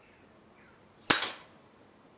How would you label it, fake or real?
real